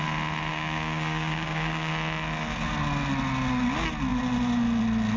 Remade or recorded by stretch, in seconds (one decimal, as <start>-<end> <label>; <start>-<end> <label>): 0.0-0.5 recorded; 0.5-1.9 remade; 1.9-5.2 recorded